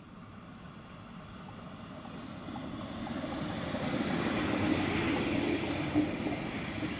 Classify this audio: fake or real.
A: real